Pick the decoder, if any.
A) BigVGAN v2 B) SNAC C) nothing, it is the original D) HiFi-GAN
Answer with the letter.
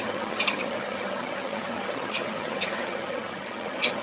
D